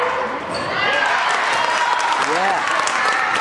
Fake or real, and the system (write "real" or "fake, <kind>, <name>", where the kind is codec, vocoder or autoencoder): real